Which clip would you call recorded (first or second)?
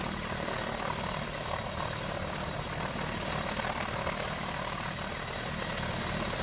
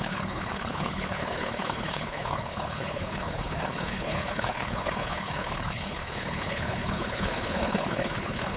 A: first